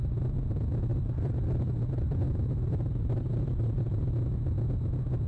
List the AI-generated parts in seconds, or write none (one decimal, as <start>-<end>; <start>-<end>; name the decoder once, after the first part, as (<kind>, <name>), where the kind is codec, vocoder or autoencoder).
0.9-4.1 (vocoder, BigVGAN v2)